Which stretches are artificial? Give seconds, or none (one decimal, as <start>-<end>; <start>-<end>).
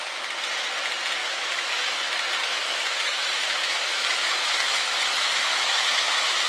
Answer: 1.2-2.0; 2.4-6.5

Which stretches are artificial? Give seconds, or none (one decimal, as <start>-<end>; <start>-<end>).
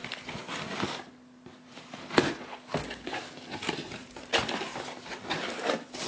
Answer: none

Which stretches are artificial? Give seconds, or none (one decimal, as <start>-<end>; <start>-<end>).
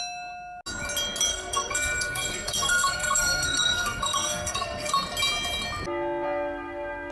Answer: 1.3-4.9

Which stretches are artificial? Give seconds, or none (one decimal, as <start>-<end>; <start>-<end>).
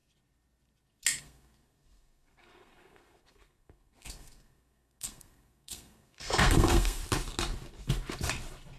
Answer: 1.2-7.0